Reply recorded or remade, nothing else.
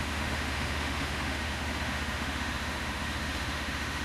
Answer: remade